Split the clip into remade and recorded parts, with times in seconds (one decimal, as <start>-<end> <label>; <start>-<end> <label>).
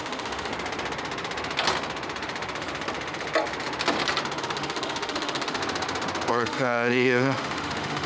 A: 0.0-0.5 remade; 0.5-4.4 recorded; 4.4-5.6 remade; 5.6-6.3 recorded; 6.3-8.1 remade